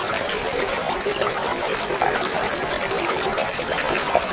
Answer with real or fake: fake